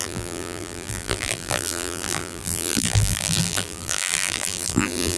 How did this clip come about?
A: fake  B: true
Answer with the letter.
A